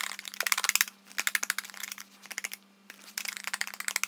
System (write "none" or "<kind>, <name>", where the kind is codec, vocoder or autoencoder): none